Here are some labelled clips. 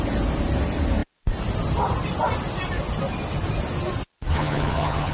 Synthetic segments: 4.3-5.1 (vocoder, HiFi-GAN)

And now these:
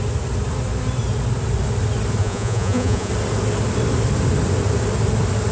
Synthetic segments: 2.2-3.1 (vocoder, Vocos)

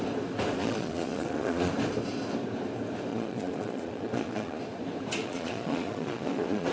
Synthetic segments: 0.6-1.7 (vocoder, Vocos); 3.1-4.6; 5.2-6.7

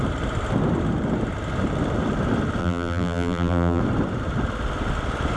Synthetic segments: 2.6-3.8 (vocoder, BigVGAN v2)

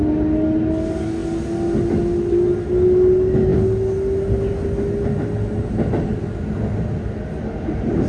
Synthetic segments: none

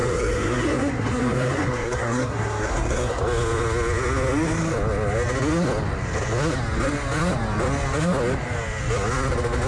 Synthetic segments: 0.0-3.2 (codec, SNAC)

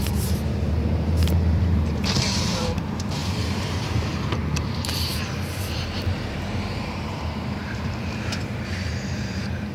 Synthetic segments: 0.0-9.7 (vocoder, BigVGAN v2)